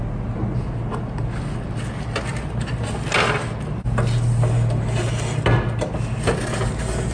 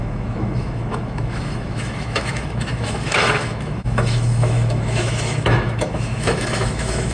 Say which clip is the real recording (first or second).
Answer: first